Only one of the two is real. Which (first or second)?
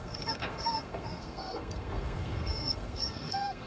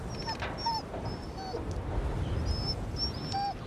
second